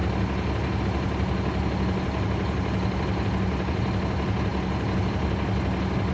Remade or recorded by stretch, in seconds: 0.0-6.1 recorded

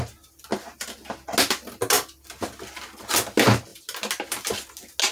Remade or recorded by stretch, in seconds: 0.0-5.1 recorded

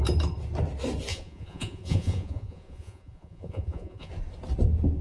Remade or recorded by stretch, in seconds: 0.0-1.1 recorded; 1.1-4.1 remade; 4.1-5.0 recorded